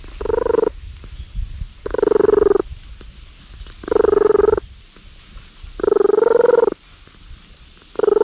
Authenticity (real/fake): real